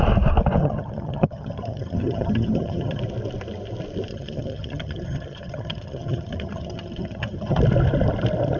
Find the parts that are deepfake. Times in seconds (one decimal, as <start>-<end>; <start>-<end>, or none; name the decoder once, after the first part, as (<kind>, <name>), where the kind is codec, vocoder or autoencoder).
0.6-3.0 (vocoder, HiFi-GAN); 4.1-7.6